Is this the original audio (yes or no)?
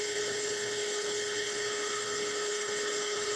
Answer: no